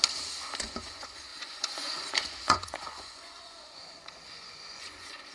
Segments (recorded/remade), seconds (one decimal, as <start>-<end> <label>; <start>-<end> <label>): 0.0-0.6 recorded; 0.6-5.3 remade